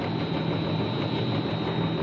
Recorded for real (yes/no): yes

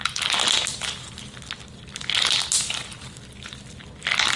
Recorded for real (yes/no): yes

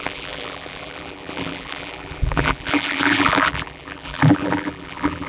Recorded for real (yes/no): no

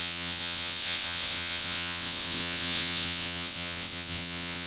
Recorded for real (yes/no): no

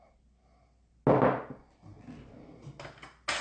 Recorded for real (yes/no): yes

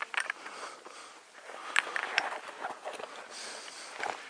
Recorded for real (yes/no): yes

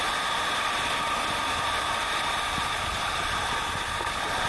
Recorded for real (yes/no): yes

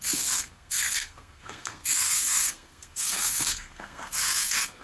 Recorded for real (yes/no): no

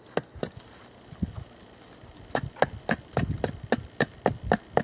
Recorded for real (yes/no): yes